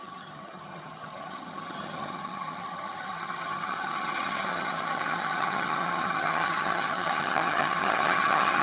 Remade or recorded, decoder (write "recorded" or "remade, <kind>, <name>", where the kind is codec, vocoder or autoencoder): remade, vocoder, HiFi-GAN